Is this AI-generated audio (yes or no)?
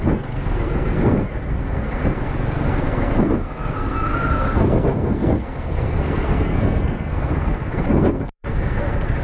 yes